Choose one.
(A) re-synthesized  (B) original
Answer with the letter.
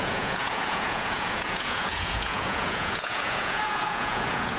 A